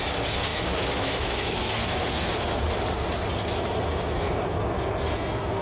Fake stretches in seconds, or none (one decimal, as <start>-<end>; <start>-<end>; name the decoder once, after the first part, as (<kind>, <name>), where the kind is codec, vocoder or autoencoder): 0.5-1.7 (autoencoder, DAC-VAE)